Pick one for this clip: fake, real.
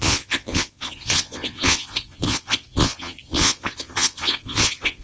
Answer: fake